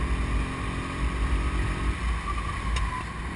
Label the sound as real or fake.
real